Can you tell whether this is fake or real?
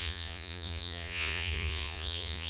fake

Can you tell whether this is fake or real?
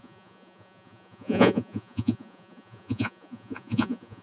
fake